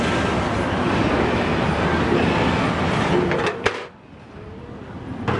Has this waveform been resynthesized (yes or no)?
no